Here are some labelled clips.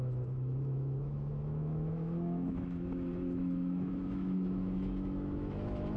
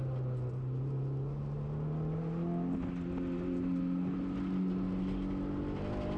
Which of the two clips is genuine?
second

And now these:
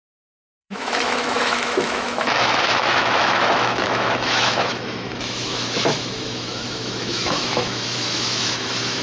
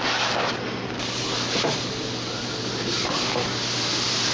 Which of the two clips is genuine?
second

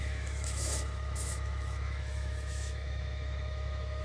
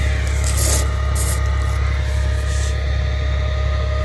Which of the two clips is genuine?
second